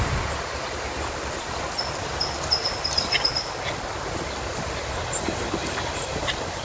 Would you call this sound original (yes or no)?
yes